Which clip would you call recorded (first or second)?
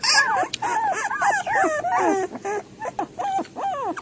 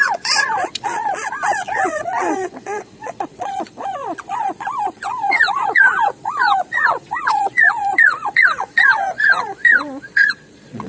first